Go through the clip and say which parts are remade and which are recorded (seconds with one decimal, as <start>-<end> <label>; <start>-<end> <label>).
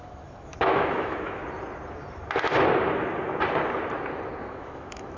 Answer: 0.0-1.4 remade; 1.4-4.5 recorded; 4.5-5.2 remade